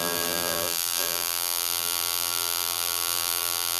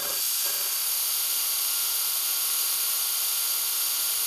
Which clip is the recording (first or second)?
second